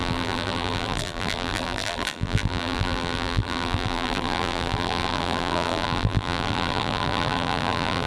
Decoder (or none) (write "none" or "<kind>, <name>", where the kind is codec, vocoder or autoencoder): vocoder, BigVGAN v2